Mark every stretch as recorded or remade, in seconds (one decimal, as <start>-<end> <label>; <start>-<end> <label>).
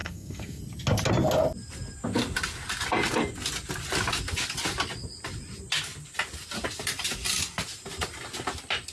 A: 0.0-0.6 remade; 0.6-8.9 recorded